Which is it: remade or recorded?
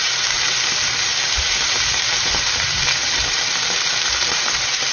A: remade